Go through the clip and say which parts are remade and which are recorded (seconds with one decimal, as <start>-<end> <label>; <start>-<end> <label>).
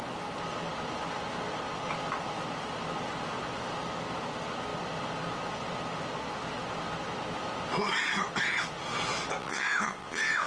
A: 0.0-9.4 recorded; 9.4-10.5 remade